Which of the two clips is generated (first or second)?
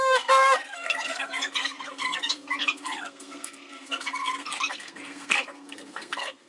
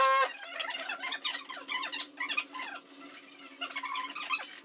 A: first